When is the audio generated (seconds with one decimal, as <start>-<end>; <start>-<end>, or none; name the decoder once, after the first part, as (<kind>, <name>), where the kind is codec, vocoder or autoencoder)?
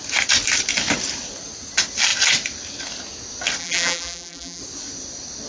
3.6-4.6 (vocoder, BigVGAN v2)